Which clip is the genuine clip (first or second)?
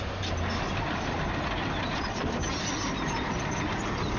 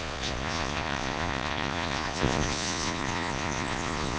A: first